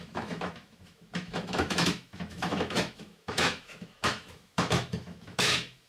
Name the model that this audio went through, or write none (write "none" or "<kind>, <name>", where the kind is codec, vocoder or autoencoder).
autoencoder, DAC-VAE